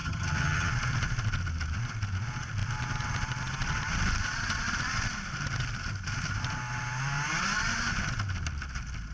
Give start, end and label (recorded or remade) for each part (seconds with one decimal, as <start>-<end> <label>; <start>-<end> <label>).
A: 0.0-0.7 remade; 0.7-9.1 recorded